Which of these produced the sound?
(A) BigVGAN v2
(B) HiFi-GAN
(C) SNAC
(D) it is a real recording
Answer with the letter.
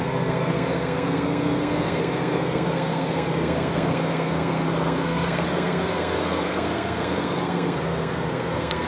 C